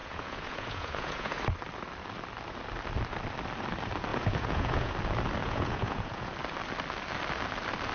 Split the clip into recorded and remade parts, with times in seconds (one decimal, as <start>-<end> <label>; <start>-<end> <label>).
0.0-1.4 remade; 1.4-4.1 recorded; 4.1-4.9 remade; 4.9-5.4 recorded; 5.4-6.3 remade; 6.3-7.9 recorded